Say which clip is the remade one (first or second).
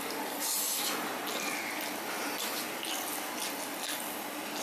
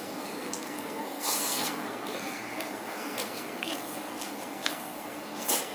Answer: second